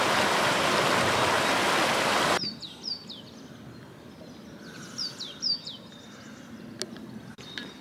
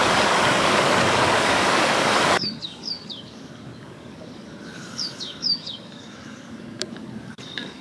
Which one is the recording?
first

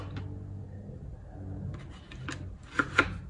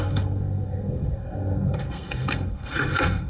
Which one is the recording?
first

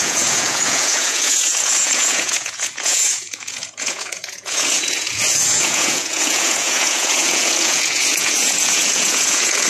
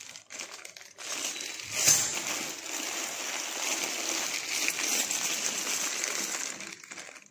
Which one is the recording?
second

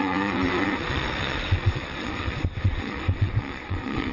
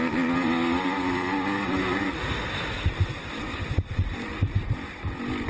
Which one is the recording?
second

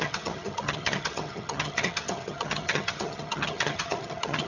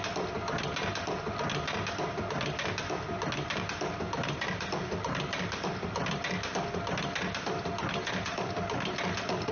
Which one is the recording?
second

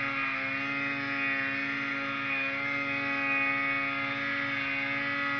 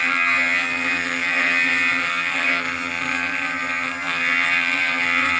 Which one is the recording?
first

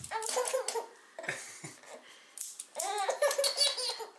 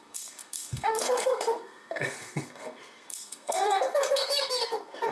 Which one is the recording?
first